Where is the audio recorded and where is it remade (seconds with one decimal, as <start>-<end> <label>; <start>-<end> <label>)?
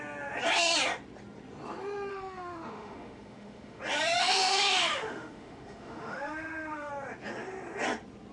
0.0-2.1 recorded; 2.1-3.8 remade; 3.8-4.2 recorded; 4.2-6.9 remade; 6.9-8.3 recorded